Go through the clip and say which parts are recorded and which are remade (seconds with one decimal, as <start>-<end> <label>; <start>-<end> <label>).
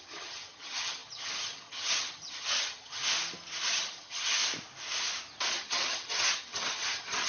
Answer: 0.0-3.0 remade; 3.0-3.7 recorded; 3.7-4.4 remade; 4.4-5.5 recorded; 5.5-7.3 remade